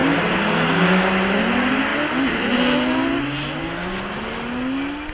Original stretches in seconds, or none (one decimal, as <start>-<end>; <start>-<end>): 0.0-5.1